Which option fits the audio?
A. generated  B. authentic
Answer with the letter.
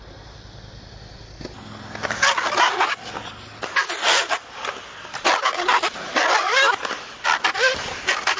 B